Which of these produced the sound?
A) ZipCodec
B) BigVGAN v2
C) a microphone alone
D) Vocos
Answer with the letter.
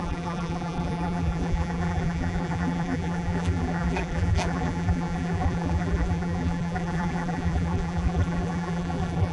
B